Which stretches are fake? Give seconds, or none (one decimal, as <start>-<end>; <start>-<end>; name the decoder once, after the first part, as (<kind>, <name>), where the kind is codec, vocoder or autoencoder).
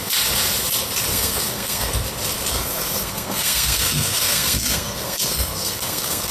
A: 1.1-1.9 (codec, SNAC); 2.5-6.3